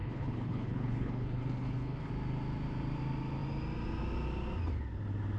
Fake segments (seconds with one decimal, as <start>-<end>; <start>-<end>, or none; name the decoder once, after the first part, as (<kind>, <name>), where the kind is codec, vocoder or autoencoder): 0.0-2.1 (codec, HILCodec)